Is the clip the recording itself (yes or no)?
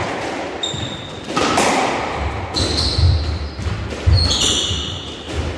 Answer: yes